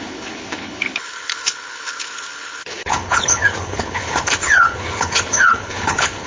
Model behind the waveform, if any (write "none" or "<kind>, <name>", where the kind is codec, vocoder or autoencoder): codec, HILCodec